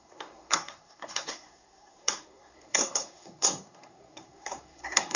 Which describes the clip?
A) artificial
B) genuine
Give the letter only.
A